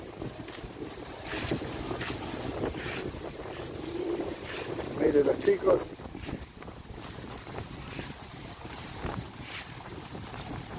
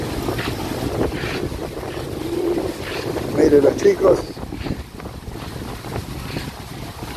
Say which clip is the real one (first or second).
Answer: second